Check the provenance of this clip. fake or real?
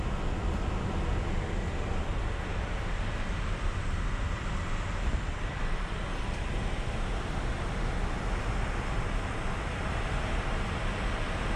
real